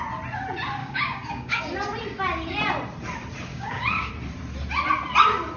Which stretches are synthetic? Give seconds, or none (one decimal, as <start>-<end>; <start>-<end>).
0.8-1.6; 3.5-4.1